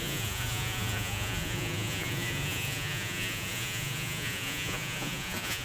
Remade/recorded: remade